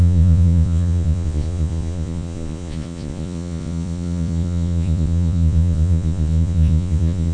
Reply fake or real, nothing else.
fake